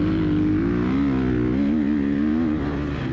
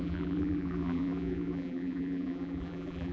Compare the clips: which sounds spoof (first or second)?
second